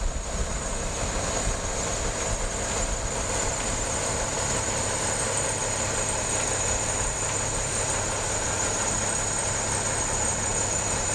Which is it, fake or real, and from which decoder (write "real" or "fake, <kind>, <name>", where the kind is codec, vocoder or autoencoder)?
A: real